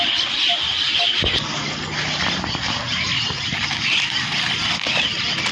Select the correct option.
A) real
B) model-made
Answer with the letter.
A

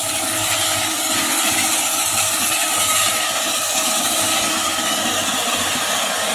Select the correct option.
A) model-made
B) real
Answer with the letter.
A